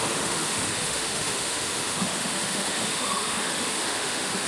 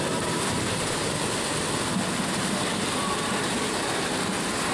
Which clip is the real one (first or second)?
second